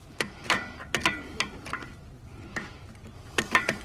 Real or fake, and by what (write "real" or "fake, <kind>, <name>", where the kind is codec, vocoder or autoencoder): real